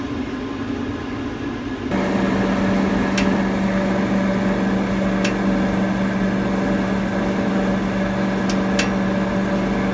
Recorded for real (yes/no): yes